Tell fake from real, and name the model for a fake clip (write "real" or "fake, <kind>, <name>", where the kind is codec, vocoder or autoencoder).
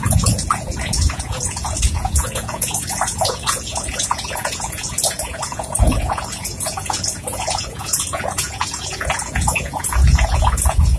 fake, vocoder, Vocos